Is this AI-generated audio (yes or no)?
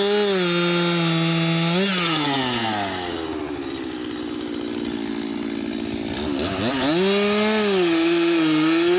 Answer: no